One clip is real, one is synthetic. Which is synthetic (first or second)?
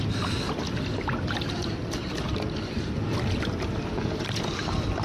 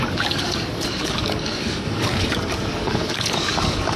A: second